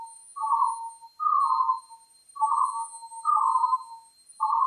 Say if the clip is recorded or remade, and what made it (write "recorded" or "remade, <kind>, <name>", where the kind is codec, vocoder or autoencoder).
recorded